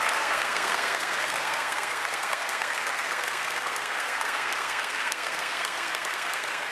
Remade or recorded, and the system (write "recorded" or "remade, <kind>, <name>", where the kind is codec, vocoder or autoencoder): remade, codec, SNAC